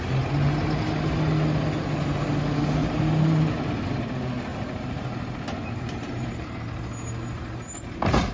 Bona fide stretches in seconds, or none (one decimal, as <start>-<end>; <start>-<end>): 0.0-2.8; 3.5-4.5; 6.6-8.3